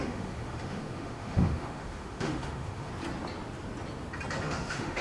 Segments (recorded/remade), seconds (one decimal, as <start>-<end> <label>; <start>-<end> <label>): 0.0-2.9 remade; 2.9-4.4 recorded; 4.4-5.0 remade